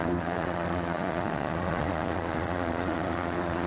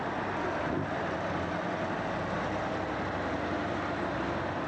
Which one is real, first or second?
second